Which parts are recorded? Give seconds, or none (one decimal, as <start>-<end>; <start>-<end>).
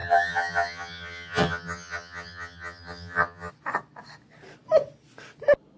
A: 3.5-5.8